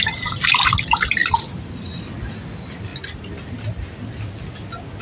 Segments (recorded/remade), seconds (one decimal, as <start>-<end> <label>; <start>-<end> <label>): 0.0-5.0 recorded